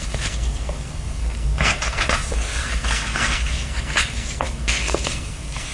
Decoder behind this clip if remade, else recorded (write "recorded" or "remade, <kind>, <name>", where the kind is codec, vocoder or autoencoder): remade, codec, SNAC